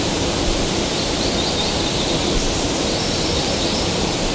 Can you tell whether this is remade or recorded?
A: remade